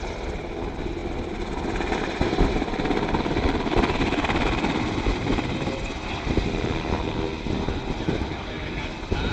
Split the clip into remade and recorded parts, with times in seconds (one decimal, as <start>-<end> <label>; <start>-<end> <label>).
0.0-9.3 recorded